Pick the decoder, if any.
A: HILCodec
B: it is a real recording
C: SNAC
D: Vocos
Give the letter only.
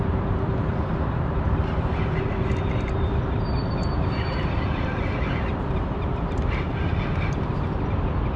B